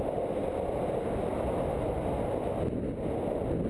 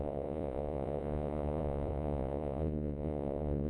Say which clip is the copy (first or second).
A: second